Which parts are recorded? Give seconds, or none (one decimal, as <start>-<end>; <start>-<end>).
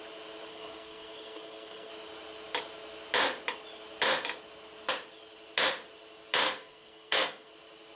0.0-0.5; 1.9-6.4; 7.5-8.0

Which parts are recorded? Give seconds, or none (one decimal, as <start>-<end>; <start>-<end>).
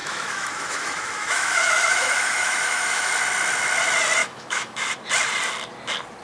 3.1-4.2; 4.9-6.2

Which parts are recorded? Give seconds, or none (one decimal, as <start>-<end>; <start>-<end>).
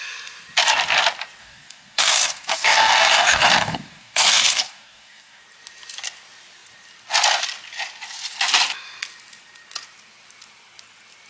0.0-1.4; 5.4-11.3